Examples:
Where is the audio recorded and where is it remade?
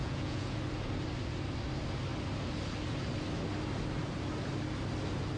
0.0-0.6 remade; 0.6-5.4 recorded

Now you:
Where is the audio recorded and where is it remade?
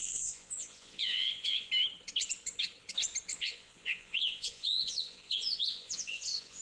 0.0-1.7 remade; 1.7-3.3 recorded; 3.3-6.6 remade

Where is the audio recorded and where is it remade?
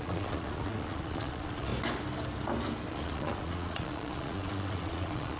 0.0-1.7 remade; 1.7-2.9 recorded; 2.9-5.4 remade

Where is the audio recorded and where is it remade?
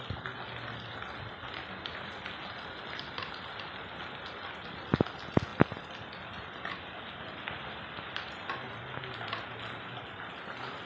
0.0-10.9 recorded